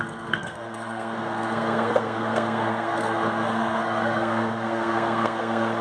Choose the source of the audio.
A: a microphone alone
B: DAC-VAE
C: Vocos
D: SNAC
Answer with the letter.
D